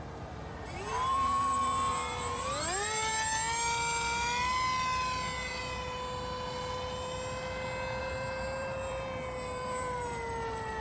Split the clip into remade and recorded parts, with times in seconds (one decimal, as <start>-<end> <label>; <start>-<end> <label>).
0.0-3.1 remade; 3.1-8.0 recorded; 8.0-10.8 remade